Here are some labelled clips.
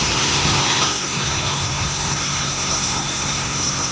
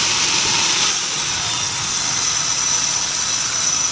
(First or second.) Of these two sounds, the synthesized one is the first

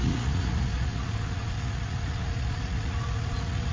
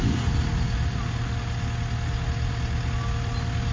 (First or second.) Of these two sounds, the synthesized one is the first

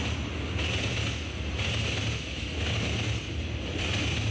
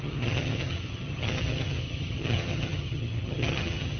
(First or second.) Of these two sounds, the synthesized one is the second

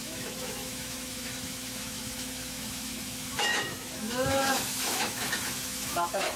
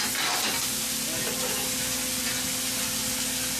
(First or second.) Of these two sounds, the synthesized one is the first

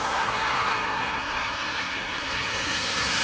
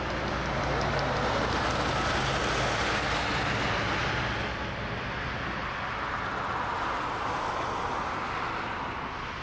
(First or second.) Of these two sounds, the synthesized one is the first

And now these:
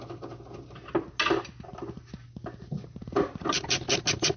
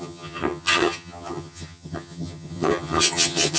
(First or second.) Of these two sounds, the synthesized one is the second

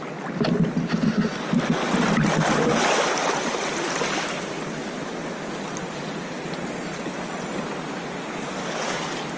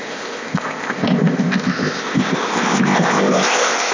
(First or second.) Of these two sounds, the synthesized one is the second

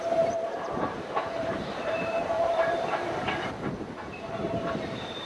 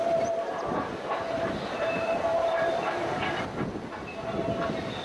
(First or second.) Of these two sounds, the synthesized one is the first